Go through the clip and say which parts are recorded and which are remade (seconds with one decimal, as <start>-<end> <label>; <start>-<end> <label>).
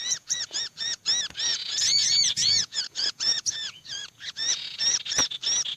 0.0-1.0 remade; 1.0-1.5 recorded; 1.5-4.8 remade; 4.8-5.8 recorded